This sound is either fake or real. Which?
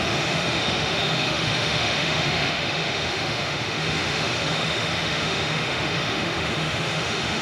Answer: fake